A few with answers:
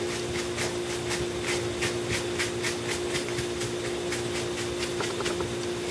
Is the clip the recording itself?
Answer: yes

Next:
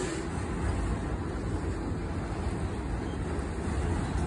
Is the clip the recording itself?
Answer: yes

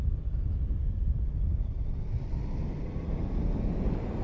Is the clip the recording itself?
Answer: yes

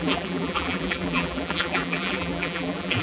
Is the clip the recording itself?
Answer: no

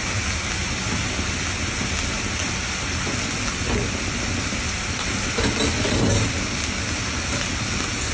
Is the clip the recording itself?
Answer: yes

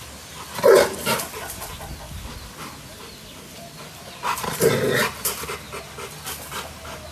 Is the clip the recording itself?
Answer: yes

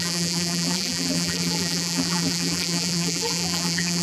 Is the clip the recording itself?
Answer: no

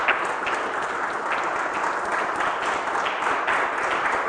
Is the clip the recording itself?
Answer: yes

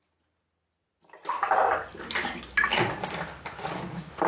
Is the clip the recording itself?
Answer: yes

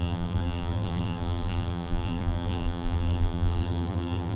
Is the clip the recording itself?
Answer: no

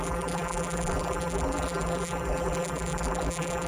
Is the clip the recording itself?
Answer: no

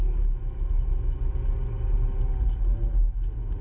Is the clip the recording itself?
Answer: yes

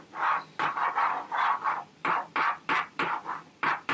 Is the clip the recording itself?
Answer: no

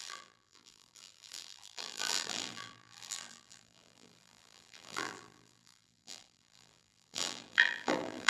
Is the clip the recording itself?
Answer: no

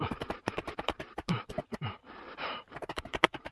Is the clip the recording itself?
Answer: no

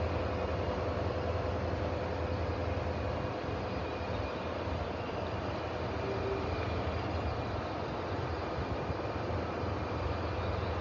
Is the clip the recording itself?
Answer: yes